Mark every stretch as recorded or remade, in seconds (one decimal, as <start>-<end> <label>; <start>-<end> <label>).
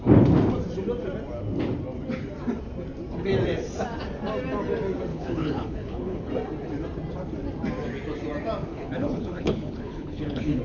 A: 0.0-5.1 recorded; 5.1-6.3 remade; 6.3-8.7 recorded; 8.7-10.6 remade